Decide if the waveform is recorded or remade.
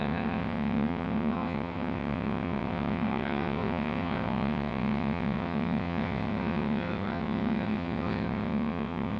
remade